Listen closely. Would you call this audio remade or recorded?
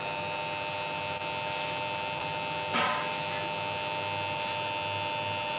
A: recorded